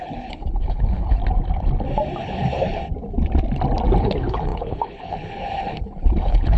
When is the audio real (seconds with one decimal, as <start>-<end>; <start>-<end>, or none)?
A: 1.2-2.2; 2.8-4.0